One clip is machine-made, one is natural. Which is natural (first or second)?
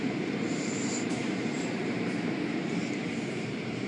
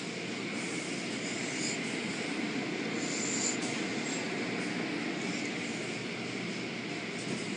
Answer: second